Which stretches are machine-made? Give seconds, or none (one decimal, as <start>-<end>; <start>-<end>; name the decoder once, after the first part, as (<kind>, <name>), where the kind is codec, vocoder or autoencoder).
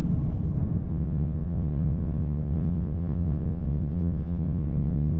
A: 0.9-5.2 (vocoder, WaveNeXt)